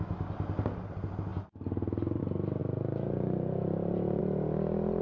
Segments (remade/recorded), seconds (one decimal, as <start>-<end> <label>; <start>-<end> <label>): 0.0-5.0 recorded